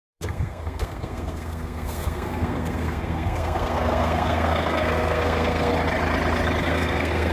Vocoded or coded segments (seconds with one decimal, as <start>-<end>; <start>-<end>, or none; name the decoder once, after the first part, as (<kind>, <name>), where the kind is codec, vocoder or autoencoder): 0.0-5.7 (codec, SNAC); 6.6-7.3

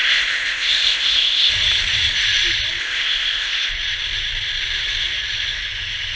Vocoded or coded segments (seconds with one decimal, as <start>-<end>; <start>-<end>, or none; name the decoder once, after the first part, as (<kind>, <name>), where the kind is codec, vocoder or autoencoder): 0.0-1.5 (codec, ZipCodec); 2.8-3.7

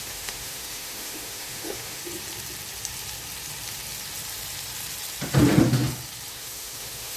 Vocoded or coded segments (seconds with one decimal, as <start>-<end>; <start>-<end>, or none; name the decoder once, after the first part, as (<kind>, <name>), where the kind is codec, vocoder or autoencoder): 0.0-2.0 (autoencoder, DAC-VAE); 6.3-7.2

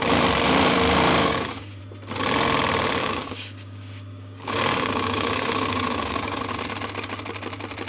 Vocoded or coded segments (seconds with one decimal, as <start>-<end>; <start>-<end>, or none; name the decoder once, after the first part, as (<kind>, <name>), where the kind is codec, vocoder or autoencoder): 1.2-1.8 (codec, DAC); 3.0-6.4

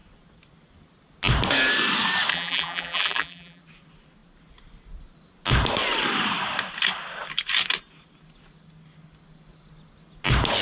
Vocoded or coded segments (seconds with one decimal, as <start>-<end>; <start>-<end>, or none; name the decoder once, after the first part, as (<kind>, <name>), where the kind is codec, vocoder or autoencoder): 2.3-3.6 (vocoder, BigVGAN v2)

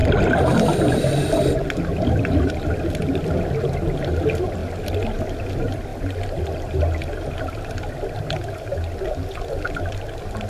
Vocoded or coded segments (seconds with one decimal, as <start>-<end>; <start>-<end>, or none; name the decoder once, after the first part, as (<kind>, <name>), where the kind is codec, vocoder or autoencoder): none

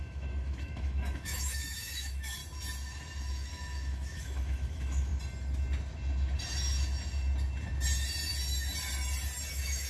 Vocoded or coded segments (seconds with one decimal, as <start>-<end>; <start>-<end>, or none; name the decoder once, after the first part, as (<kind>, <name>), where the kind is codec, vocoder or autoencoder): 0.0-2.4 (autoencoder, DAC-VAE); 3.2-5.1; 9.5-9.9

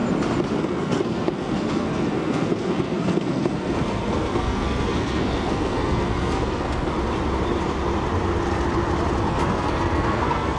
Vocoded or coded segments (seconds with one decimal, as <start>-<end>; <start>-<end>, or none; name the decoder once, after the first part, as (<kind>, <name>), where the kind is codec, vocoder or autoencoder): 0.6-6.9 (codec, SNAC); 9.3-10.6